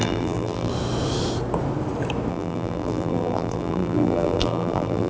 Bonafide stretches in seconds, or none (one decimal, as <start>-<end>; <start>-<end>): 0.7-2.3